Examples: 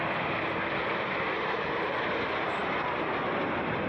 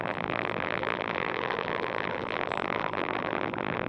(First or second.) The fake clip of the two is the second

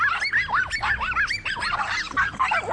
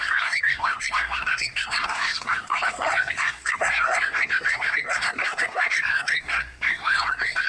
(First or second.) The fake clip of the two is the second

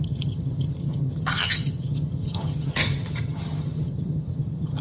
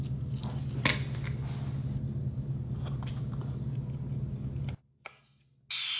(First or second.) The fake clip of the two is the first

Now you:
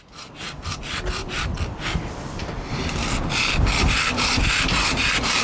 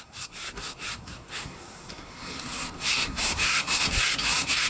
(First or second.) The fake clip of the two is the second